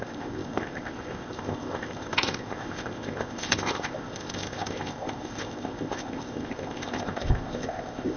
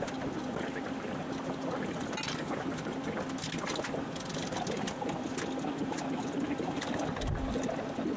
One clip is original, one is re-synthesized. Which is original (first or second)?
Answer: second